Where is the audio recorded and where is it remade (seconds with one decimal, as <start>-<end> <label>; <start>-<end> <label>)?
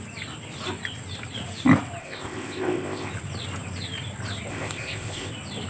0.0-2.0 recorded; 2.0-3.1 remade; 3.1-4.5 recorded; 4.5-5.3 remade; 5.3-5.7 recorded